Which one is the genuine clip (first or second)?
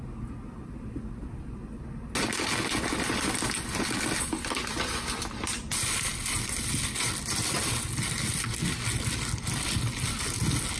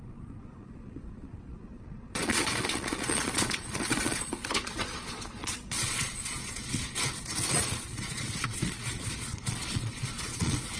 first